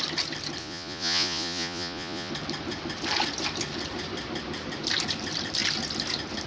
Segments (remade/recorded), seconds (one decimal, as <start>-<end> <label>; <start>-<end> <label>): 0.0-0.6 recorded; 0.6-2.3 remade; 2.3-6.5 recorded